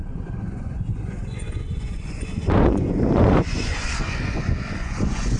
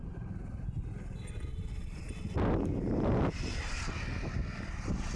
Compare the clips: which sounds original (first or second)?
second